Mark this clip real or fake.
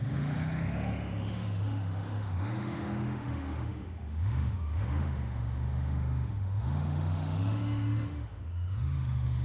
fake